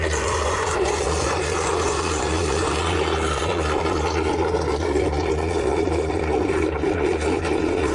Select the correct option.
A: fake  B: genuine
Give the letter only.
A